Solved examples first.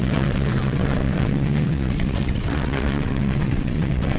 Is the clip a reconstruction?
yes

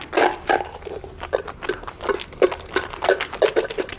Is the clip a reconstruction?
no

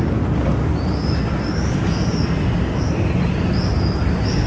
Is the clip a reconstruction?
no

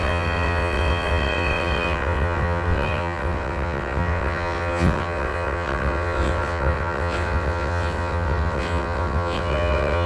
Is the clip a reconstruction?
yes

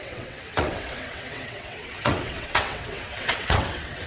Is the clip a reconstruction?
yes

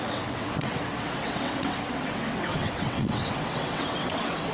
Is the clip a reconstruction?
yes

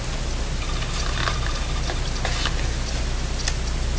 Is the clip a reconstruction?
no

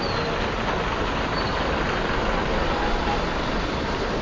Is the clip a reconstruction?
no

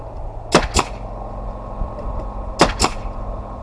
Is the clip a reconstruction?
no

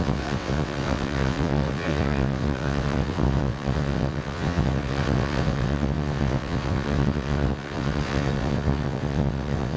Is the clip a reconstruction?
yes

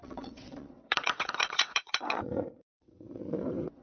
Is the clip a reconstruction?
yes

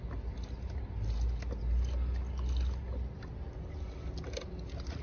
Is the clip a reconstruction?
no